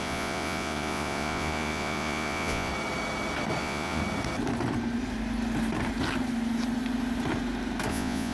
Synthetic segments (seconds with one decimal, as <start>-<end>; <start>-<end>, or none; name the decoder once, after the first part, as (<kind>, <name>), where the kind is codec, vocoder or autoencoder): 0.0-2.7 (vocoder, Vocos); 3.6-4.0; 7.9-8.3